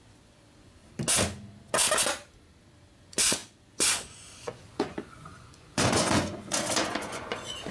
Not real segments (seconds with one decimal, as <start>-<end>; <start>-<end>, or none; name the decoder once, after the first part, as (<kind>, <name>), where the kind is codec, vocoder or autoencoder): 0.0-0.8 (vocoder, Vocos); 3.0-7.7